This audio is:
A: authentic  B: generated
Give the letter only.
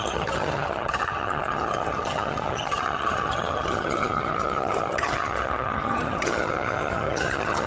B